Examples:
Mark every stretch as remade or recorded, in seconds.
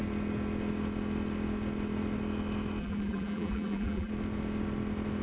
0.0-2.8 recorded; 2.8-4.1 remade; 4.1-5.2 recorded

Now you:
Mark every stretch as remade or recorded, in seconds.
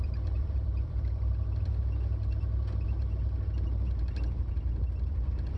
0.0-1.7 remade; 1.7-5.1 recorded; 5.1-5.6 remade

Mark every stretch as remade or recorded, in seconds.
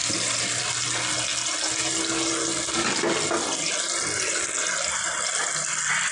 0.0-0.6 remade; 0.6-6.1 recorded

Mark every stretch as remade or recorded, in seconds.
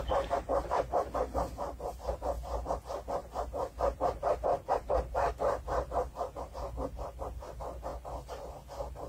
0.0-9.1 recorded